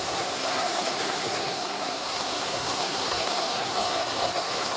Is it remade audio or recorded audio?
remade